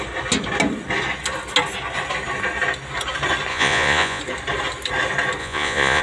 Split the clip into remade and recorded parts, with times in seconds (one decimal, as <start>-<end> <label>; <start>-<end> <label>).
0.0-3.5 recorded; 3.5-4.2 remade; 4.2-5.4 recorded; 5.4-6.0 remade